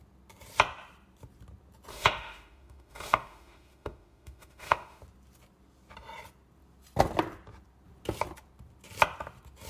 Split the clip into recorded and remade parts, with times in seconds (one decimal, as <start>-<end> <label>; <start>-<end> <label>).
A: 0.0-1.9 recorded; 1.9-5.0 remade; 5.0-9.7 recorded